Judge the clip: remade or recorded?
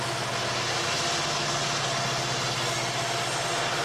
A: recorded